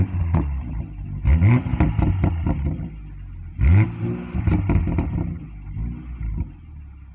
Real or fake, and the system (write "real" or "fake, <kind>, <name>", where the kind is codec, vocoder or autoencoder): real